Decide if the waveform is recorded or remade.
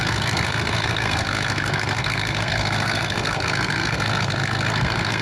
remade